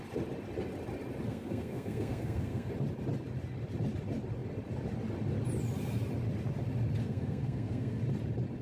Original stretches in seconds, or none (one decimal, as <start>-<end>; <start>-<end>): 0.0-1.2; 2.7-7.0; 8.0-8.6